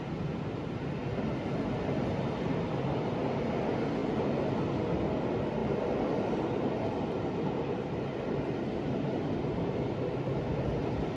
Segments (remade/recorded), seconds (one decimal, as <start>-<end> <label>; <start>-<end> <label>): 0.0-11.2 recorded